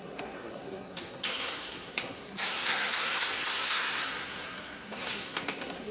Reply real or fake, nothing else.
fake